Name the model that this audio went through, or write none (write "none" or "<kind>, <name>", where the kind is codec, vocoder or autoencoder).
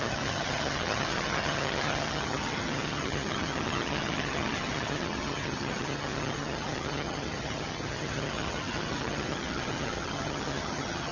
vocoder, HiFi-GAN